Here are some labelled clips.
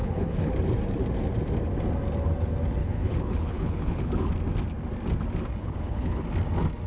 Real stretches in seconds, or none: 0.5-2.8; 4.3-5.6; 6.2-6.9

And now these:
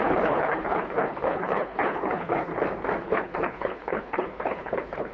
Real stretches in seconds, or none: 2.5-3.0

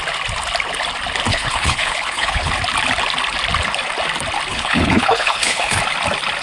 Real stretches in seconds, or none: 0.0-1.3; 2.5-4.5; 5.8-6.4

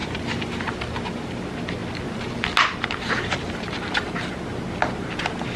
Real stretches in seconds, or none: 0.0-5.6